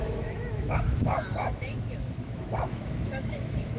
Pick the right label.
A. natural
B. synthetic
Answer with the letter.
B